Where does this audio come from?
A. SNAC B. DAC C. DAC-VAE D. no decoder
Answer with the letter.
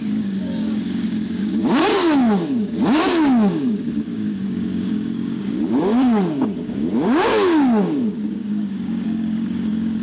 B